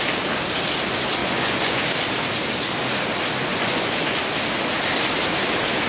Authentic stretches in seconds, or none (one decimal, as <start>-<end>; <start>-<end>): 0.0-1.2; 1.8-3.5; 4.2-5.9